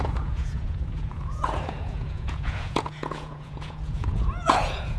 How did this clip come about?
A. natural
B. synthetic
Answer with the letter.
B